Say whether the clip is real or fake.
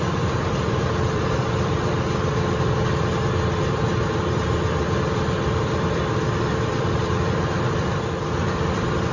fake